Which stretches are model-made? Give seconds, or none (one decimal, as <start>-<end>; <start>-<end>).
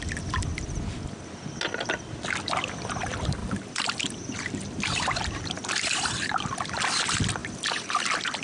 3.4-5.3